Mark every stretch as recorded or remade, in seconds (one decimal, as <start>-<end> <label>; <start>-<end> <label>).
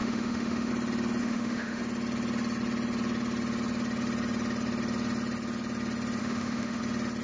0.0-0.7 remade; 0.7-1.2 recorded; 1.2-1.8 remade; 1.8-6.2 recorded; 6.2-6.8 remade; 6.8-7.2 recorded